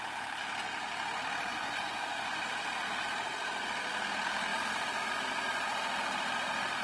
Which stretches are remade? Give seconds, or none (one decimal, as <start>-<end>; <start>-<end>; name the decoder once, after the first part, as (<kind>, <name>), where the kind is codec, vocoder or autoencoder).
1.5-2.4 (vocoder, Vocos)